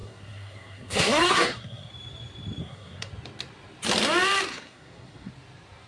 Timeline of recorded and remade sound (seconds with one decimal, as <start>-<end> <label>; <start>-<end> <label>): 0.0-1.9 remade; 1.9-2.6 recorded; 2.6-3.1 remade; 3.1-4.5 recorded; 4.5-5.3 remade; 5.3-5.9 recorded